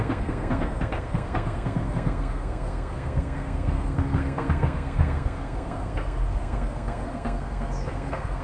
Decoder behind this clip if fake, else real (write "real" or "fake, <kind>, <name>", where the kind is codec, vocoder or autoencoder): fake, codec, SNAC